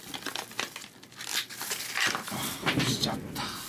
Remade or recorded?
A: recorded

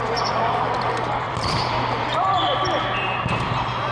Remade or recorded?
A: remade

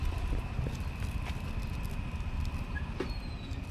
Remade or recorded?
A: recorded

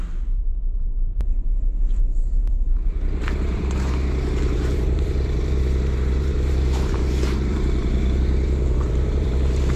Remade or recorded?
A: remade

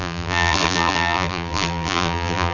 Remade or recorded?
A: remade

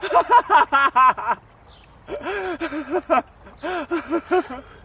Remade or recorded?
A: recorded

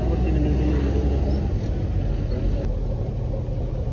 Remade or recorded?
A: recorded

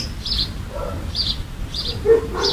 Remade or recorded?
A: recorded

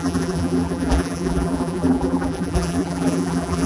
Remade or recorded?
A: remade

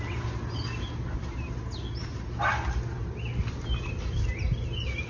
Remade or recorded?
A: recorded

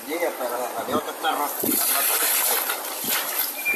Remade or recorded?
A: remade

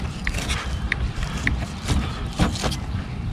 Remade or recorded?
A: recorded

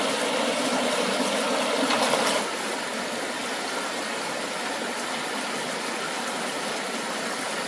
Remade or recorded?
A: recorded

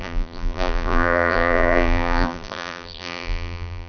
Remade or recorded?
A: remade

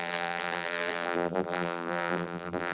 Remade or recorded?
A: remade